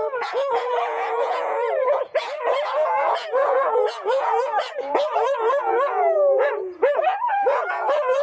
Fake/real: fake